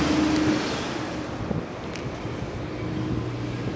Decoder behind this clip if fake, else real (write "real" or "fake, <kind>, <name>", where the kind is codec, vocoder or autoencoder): real